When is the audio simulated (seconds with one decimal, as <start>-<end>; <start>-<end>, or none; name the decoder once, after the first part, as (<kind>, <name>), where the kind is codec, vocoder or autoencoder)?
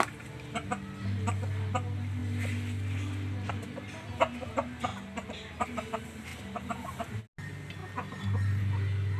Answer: none